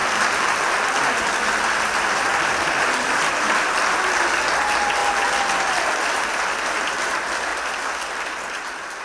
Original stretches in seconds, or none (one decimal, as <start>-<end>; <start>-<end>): 0.5-2.3; 3.8-5.0; 6.4-9.0